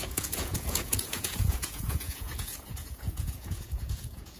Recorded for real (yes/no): no